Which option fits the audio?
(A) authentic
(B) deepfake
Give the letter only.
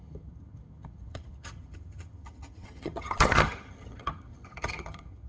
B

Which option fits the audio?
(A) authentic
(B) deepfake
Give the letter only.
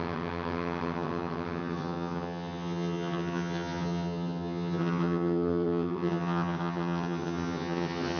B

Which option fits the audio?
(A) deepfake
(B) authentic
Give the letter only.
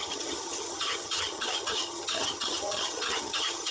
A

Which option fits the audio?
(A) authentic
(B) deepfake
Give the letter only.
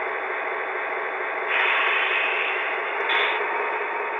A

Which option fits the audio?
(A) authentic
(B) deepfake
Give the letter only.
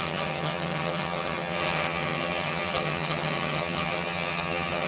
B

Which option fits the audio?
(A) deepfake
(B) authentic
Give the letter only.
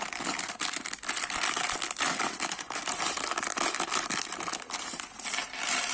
B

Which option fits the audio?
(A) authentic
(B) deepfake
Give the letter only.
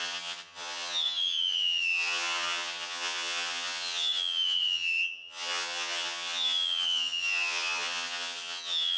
B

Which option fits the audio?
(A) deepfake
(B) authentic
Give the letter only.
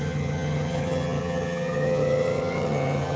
A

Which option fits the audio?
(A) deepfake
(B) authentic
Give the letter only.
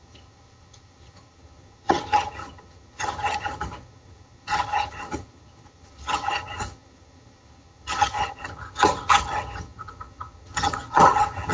A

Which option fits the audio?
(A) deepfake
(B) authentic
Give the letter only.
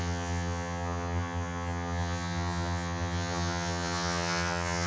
A